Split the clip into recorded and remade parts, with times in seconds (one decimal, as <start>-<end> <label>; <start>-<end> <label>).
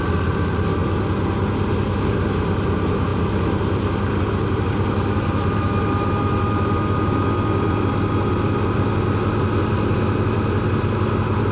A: 0.0-11.5 recorded